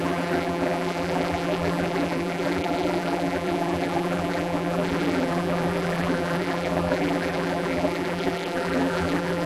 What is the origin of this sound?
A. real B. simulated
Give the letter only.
B